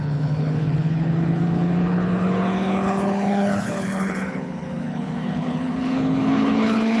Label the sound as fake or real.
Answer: fake